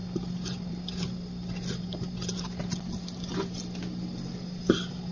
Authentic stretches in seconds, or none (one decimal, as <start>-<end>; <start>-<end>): 0.0-5.1